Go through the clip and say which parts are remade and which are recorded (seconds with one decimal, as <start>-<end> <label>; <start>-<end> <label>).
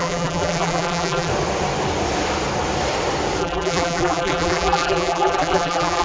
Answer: 0.0-1.3 remade; 1.3-3.4 recorded; 3.4-6.0 remade